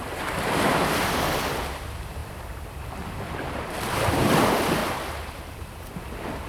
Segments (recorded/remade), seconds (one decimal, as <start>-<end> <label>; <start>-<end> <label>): 0.0-4.8 recorded; 4.8-6.0 remade; 6.0-6.5 recorded